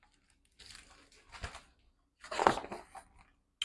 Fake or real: real